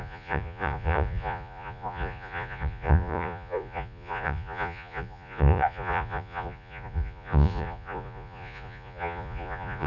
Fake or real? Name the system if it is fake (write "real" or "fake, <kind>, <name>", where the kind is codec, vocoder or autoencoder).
fake, vocoder, Vocos